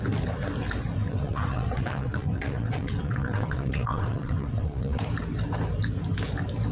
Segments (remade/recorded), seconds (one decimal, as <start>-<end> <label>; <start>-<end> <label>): 0.0-1.0 recorded; 1.0-5.0 remade; 5.0-6.7 recorded